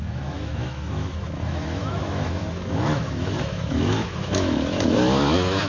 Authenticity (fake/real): fake